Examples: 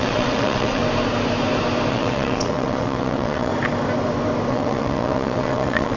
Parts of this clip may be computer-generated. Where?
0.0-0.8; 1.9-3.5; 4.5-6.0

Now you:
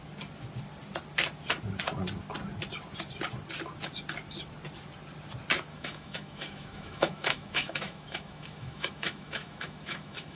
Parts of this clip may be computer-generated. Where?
5.7-10.4

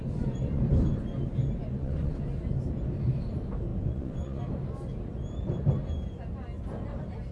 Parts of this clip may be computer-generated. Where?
0.0-0.6; 1.6-2.2; 3.7-4.4

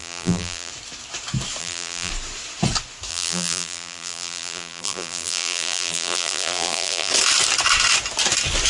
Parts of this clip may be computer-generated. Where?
0.0-0.7; 1.6-2.1; 3.1-7.1

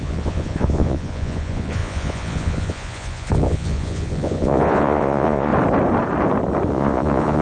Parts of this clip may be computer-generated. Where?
0.0-5.5; 6.7-7.4